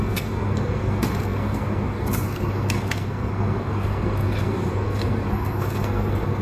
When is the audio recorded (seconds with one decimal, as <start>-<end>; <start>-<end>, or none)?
none